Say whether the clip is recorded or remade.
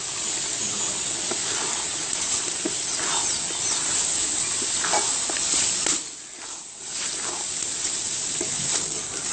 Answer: recorded